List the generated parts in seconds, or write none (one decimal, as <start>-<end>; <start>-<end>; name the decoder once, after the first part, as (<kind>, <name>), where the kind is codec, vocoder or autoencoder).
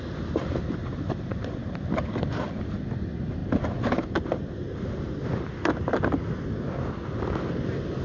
0.8-2.0 (vocoder, BigVGAN v2)